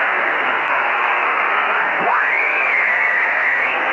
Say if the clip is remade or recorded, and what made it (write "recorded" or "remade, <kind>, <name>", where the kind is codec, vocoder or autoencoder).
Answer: remade, codec, SNAC